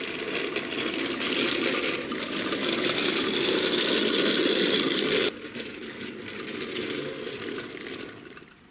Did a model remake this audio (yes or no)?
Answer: no